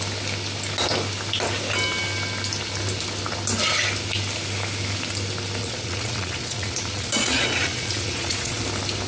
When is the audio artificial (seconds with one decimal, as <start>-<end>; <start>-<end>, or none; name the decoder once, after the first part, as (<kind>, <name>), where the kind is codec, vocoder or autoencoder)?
5.6-8.6 (vocoder, Vocos)